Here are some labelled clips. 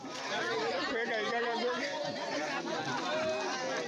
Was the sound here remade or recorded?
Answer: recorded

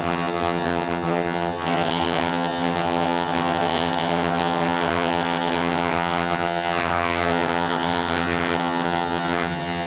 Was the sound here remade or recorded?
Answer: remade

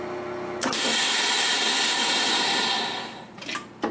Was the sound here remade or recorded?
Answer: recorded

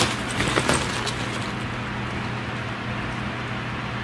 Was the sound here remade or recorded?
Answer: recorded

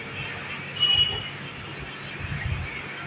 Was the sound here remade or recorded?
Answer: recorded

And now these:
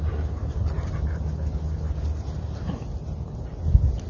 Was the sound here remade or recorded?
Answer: recorded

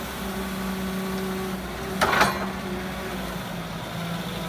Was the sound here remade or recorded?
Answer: recorded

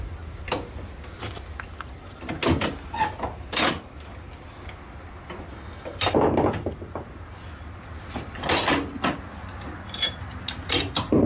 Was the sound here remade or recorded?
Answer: recorded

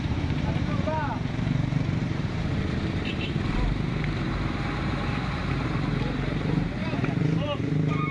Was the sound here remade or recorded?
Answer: remade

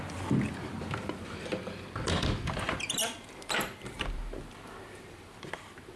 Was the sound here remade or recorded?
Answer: remade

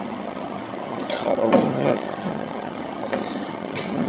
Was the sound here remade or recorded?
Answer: remade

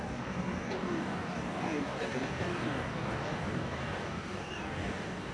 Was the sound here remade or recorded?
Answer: remade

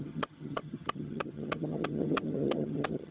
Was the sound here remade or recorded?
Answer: remade